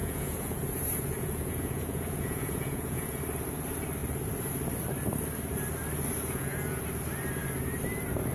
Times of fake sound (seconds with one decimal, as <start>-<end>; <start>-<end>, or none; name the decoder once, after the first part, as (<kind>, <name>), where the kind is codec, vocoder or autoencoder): 0.0-3.2 (vocoder, Vocos); 6.2-6.8